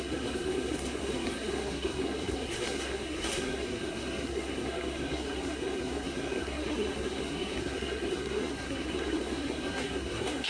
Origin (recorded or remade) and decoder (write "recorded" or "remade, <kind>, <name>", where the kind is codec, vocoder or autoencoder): remade, codec, SNAC